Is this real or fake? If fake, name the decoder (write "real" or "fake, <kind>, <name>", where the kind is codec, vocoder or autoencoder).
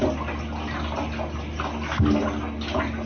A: real